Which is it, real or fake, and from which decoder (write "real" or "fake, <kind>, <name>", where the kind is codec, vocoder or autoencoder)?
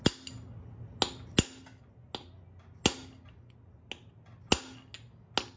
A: real